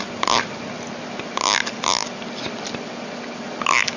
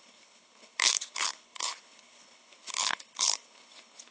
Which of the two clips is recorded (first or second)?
first